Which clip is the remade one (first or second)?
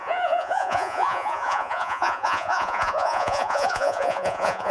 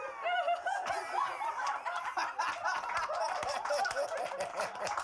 first